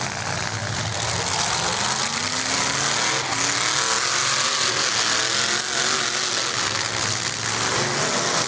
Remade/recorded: recorded